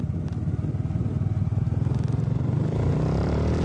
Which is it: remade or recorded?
recorded